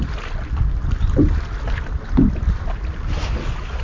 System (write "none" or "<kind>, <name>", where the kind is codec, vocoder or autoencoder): none